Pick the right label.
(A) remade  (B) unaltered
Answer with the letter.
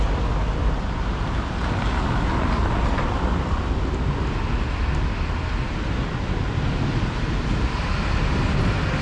B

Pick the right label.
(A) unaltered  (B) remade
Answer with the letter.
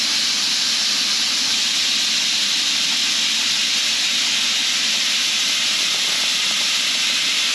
A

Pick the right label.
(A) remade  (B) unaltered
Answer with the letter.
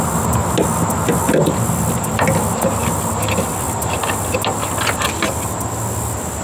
B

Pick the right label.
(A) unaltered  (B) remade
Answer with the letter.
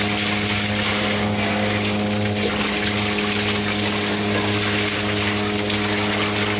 A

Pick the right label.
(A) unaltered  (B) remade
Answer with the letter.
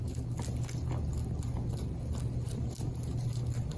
A